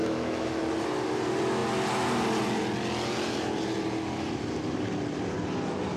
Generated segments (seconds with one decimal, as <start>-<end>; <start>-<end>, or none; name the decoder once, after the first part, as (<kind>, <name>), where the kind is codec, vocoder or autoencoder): 0.0-0.6 (autoencoder, DAC-VAE)